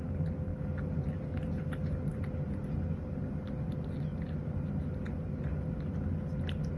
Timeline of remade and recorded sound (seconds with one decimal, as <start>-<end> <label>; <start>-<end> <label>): 0.0-6.8 recorded